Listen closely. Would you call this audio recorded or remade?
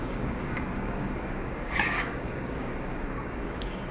remade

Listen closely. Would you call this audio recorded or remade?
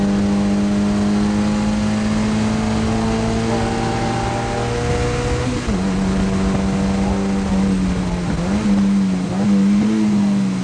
recorded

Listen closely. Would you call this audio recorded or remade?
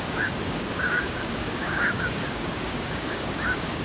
remade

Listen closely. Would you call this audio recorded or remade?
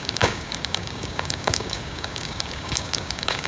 remade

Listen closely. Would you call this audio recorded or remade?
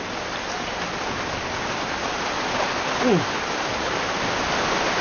recorded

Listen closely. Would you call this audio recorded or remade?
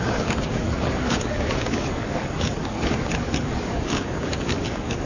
remade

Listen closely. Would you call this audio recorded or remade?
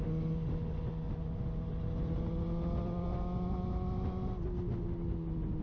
recorded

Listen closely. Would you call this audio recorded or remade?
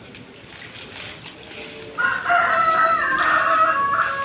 recorded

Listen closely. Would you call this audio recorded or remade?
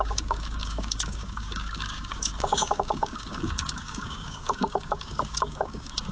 remade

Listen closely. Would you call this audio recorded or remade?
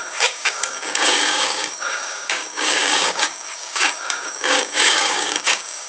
remade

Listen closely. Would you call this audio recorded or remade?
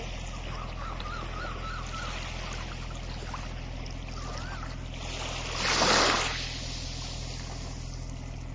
recorded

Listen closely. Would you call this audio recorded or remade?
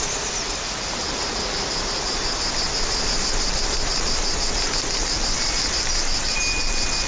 recorded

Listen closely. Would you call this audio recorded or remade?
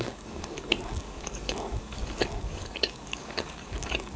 remade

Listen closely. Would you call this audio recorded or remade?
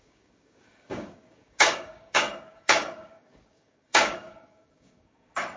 remade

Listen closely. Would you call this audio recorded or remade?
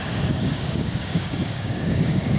remade